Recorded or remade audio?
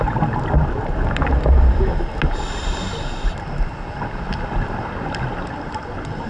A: recorded